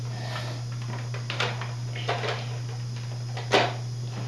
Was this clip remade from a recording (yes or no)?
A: no